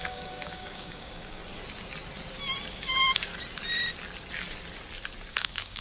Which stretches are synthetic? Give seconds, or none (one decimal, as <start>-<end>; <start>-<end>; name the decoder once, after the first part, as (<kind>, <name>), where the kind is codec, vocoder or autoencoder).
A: 0.0-1.4 (codec, DAC); 2.7-3.3; 5.3-5.8